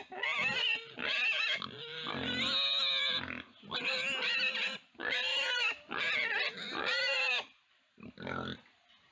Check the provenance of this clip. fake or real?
real